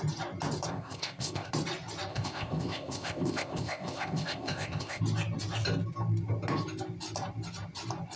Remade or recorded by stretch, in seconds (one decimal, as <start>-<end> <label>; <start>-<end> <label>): 0.0-0.7 recorded; 0.7-1.5 remade; 1.5-2.1 recorded; 2.1-5.0 remade; 5.0-8.2 recorded